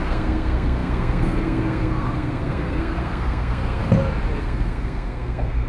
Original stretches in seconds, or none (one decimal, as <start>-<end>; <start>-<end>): 3.8-4.4